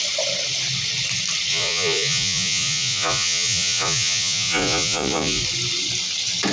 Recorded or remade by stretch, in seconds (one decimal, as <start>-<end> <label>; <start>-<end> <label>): 0.0-1.5 recorded; 1.5-5.4 remade; 5.4-6.5 recorded